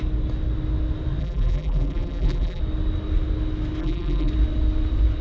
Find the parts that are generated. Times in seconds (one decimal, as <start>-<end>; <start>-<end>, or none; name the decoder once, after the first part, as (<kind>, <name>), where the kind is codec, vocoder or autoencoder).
1.2-2.6 (vocoder, BigVGAN v2); 3.8-4.3